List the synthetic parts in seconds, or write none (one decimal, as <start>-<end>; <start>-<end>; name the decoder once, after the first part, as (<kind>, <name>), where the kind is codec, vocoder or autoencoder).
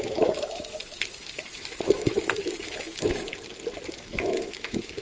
0.0-3.3 (autoencoder, DAC-VAE); 3.9-5.0